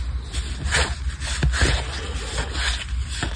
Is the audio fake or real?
real